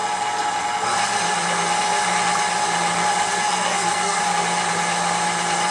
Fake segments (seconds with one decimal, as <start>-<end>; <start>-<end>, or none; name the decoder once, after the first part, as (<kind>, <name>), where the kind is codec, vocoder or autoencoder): 3.4-4.2 (codec, SNAC)